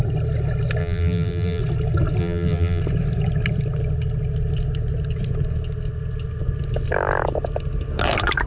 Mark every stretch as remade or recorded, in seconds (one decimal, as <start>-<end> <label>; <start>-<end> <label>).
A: 0.0-0.8 recorded; 0.8-1.6 remade; 1.6-2.2 recorded; 2.2-2.8 remade; 2.8-8.5 recorded